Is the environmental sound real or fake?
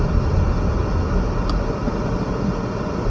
real